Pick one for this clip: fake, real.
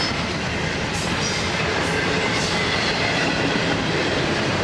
fake